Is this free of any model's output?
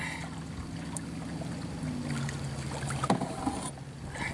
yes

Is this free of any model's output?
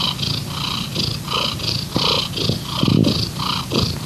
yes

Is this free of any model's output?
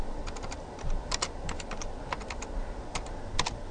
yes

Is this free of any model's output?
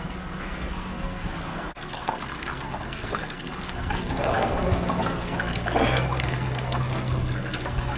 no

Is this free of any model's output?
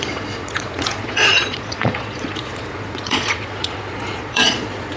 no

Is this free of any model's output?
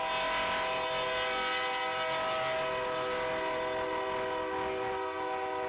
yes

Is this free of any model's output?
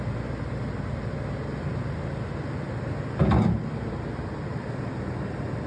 yes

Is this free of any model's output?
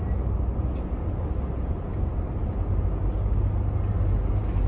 yes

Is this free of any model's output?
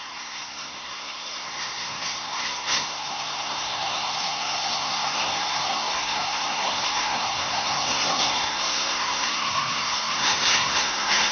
no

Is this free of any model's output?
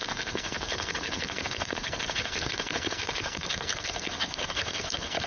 no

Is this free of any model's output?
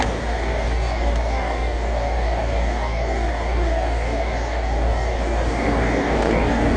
no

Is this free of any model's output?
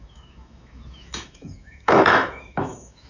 no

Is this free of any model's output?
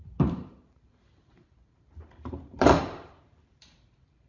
no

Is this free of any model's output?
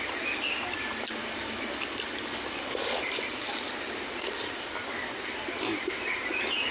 yes